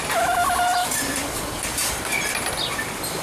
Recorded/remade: recorded